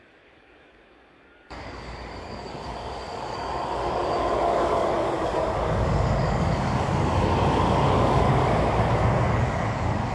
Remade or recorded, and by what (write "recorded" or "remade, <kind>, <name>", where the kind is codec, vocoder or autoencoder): remade, codec, DAC